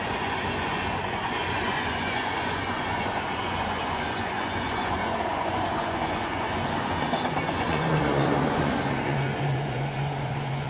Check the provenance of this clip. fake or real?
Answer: fake